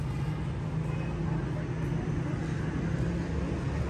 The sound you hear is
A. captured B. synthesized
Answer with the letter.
A